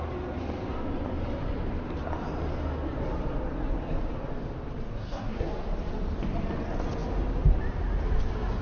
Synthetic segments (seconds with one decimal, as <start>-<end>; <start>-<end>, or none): 4.9-5.5

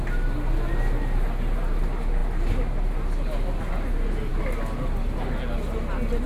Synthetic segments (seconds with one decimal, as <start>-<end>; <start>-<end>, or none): none